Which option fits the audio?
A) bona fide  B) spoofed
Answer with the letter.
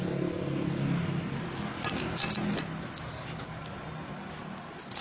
A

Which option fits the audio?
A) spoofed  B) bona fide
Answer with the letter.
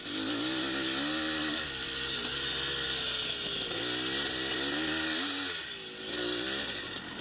B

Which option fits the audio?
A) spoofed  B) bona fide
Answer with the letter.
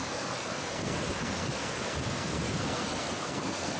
A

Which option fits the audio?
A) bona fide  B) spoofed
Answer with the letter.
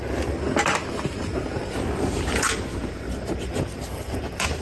A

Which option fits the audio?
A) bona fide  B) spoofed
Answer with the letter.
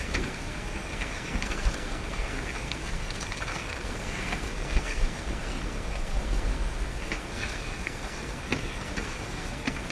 B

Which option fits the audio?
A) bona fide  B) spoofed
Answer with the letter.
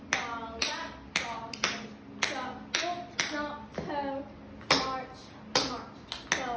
A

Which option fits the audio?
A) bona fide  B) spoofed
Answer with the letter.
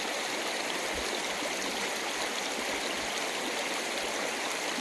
A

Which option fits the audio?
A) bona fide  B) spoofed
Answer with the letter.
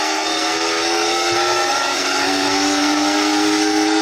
B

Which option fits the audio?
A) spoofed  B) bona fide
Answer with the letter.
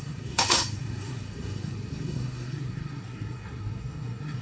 A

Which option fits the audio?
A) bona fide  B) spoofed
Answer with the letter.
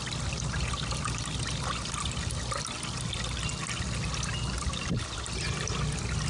A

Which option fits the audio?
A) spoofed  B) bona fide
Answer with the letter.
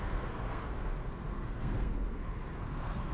A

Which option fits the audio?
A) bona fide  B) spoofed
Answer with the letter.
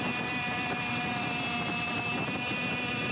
A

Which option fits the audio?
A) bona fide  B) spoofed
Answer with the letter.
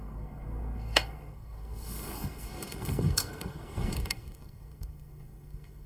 B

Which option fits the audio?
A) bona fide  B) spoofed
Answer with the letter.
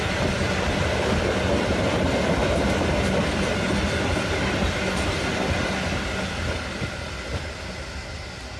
A